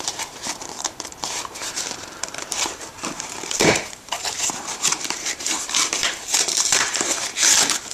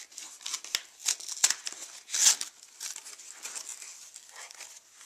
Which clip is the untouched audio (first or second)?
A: second